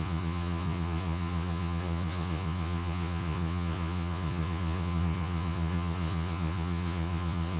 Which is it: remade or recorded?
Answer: remade